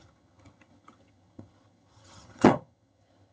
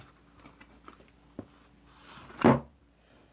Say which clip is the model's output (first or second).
first